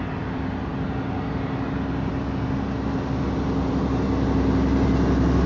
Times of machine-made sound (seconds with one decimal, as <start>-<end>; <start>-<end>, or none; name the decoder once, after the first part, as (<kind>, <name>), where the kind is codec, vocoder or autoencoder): none